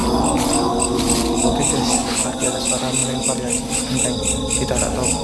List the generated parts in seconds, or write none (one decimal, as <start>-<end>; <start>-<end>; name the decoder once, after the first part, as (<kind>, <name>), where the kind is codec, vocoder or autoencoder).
2.0-2.6 (vocoder, Vocos)